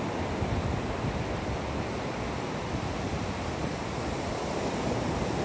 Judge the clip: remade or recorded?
recorded